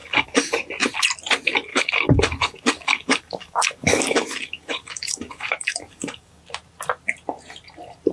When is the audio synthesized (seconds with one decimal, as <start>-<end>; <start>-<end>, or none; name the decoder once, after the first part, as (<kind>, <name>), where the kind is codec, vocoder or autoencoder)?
0.0-0.5 (codec, DAC); 1.7-6.4